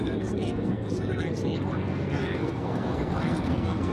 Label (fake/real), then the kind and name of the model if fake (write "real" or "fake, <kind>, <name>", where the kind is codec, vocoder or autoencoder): fake, codec, SNAC